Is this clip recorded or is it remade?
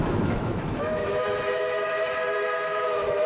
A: remade